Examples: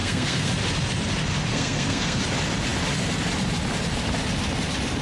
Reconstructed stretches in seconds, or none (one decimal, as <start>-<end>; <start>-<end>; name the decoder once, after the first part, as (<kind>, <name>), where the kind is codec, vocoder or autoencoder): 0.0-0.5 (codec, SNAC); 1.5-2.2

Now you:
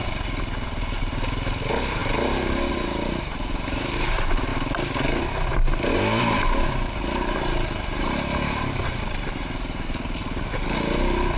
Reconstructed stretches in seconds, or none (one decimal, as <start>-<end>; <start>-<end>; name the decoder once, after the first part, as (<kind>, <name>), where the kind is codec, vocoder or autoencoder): 0.0-2.0 (vocoder, BigVGAN v2); 2.7-4.5; 6.2-10.2

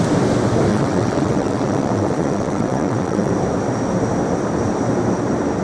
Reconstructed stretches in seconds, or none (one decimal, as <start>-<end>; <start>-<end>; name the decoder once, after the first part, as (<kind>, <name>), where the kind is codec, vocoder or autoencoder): 0.7-3.3 (vocoder, WaveNeXt)